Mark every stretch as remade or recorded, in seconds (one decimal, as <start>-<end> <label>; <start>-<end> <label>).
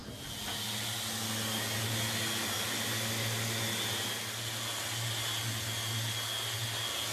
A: 0.0-7.1 recorded